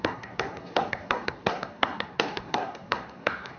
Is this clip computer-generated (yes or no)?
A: yes